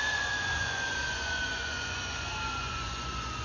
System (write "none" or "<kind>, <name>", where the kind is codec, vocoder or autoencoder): vocoder, Vocos